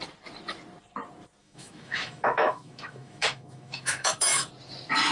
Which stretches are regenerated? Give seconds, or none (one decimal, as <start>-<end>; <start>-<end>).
1.4-4.5